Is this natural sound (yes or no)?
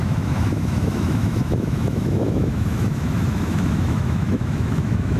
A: no